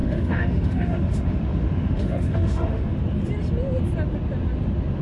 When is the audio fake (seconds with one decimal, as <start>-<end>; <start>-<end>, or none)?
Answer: 0.0-3.0